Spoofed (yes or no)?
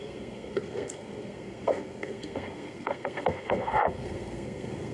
yes